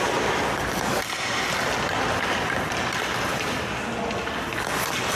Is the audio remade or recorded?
recorded